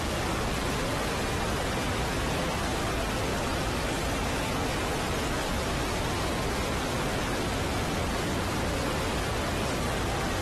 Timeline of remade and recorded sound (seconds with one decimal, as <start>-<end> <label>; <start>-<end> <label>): 0.0-1.8 recorded; 1.8-2.6 remade; 2.6-10.4 recorded